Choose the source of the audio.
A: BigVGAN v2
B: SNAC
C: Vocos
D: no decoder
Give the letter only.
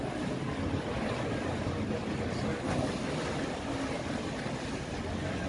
D